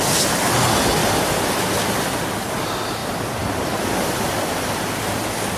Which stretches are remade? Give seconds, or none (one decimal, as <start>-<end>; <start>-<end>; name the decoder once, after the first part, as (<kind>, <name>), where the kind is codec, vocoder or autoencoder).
1.0-2.2 (vocoder, BigVGAN v2); 3.0-4.8